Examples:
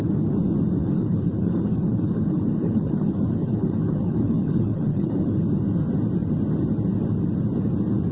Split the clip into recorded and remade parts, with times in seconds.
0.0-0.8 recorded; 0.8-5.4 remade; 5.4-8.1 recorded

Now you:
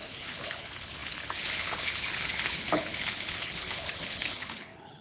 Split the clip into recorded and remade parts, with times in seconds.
0.0-5.0 remade

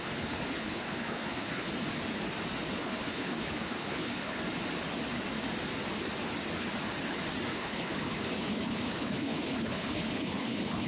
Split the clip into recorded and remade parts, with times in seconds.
0.0-1.7 remade; 1.7-2.8 recorded; 2.8-4.4 remade; 4.4-7.5 recorded; 7.5-10.9 remade

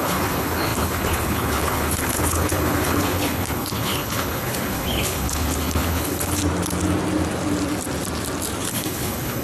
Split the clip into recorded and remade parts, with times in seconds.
0.0-6.4 remade; 6.4-8.7 recorded; 8.7-9.4 remade

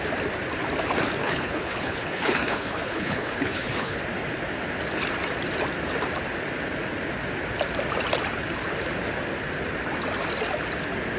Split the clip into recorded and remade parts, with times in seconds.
0.0-1.2 recorded; 1.2-4.0 remade; 4.0-11.2 recorded

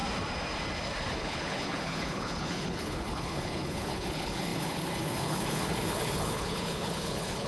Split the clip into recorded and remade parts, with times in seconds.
0.0-1.0 recorded; 1.0-7.5 remade

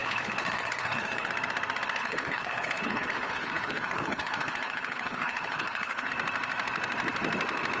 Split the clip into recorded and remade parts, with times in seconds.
0.0-1.3 remade; 1.3-2.0 recorded; 2.0-6.1 remade; 6.1-7.8 recorded

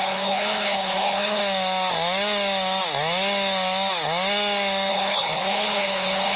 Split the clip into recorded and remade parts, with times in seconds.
0.0-1.4 remade; 1.4-4.9 recorded; 4.9-6.4 remade